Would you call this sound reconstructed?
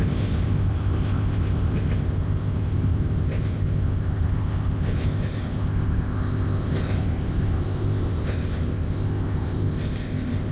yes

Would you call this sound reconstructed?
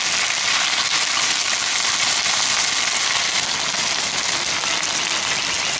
no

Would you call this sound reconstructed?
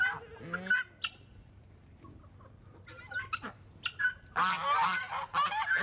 no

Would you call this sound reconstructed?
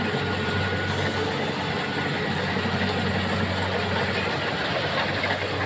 no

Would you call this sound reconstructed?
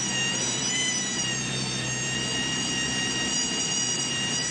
yes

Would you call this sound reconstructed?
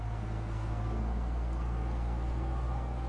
yes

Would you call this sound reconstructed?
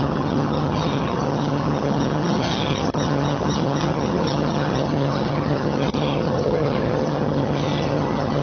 yes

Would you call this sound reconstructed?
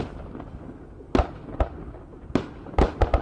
no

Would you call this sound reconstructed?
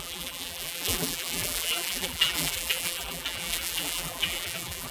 yes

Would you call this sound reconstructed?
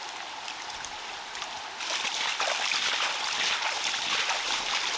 yes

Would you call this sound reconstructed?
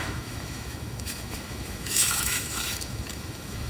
yes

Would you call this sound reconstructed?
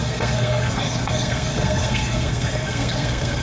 yes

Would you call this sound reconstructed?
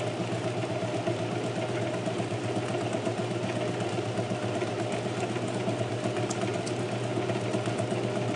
no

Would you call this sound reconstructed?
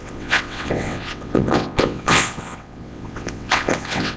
yes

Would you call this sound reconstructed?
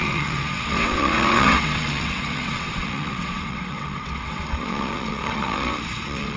yes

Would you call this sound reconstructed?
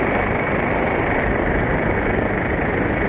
no